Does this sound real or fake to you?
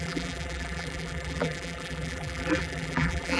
fake